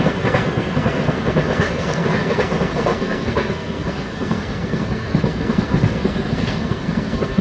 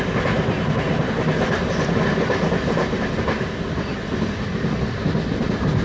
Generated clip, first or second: first